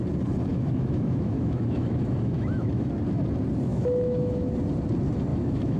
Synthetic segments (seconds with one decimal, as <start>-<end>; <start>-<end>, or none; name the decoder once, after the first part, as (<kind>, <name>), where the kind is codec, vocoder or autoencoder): 0.5-2.9 (autoencoder, DAC-VAE); 3.7-4.5; 5.3-5.8